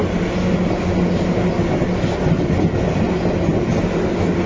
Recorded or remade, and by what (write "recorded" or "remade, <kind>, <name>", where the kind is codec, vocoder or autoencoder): recorded